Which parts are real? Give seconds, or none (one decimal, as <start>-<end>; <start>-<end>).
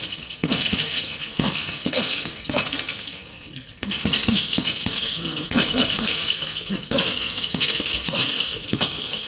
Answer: none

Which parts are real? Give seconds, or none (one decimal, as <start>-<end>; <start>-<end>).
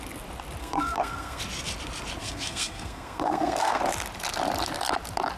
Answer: 0.0-0.6; 1.4-2.2; 3.8-5.4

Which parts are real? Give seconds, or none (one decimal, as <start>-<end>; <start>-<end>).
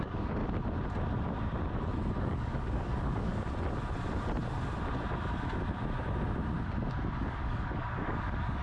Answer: 0.4-2.2; 3.3-7.3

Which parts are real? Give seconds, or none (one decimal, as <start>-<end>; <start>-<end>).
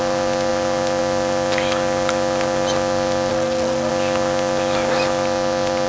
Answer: 0.0-3.3; 3.9-5.9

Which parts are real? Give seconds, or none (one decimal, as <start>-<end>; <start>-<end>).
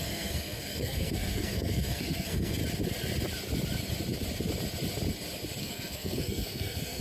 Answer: 2.6-5.6